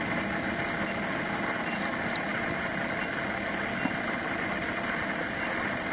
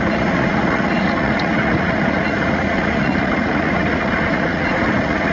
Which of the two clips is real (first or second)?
first